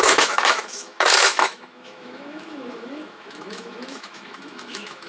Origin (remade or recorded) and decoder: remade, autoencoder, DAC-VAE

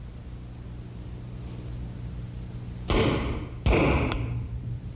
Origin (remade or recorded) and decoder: recorded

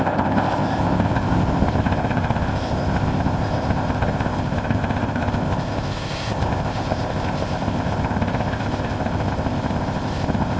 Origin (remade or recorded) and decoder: remade, codec, ZipCodec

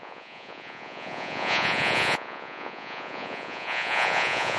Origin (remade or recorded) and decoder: remade, vocoder, Vocos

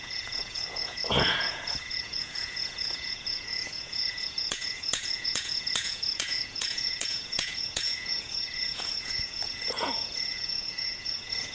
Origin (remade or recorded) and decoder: remade, vocoder, Vocos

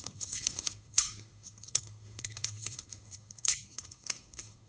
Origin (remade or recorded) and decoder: remade, codec, SNAC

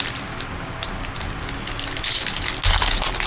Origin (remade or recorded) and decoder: recorded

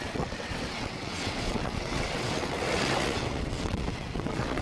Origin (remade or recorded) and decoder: remade, vocoder, WaveNeXt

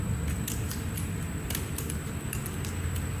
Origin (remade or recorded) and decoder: recorded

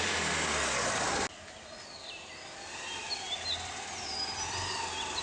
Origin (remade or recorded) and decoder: recorded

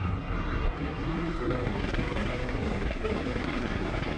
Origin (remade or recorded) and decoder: remade, codec, SNAC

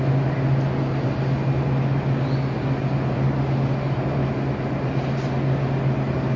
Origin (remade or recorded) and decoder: recorded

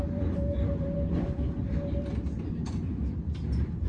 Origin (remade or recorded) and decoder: remade, vocoder, BigVGAN v2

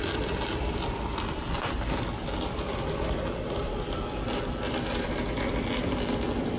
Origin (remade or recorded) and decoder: recorded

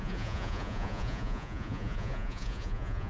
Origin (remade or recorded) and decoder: remade, vocoder, Vocos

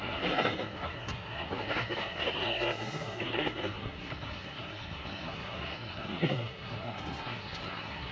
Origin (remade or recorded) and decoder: remade, codec, SNAC